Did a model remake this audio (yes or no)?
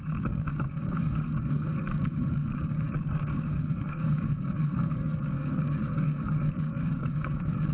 yes